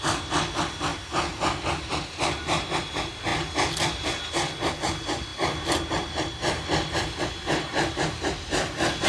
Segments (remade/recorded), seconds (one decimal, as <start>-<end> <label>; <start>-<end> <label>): 0.0-9.1 recorded